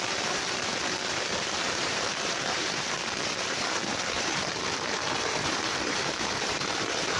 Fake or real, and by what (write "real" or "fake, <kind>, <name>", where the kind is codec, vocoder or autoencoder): fake, vocoder, BigVGAN v2